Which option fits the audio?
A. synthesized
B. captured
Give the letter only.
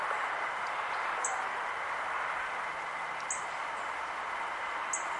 B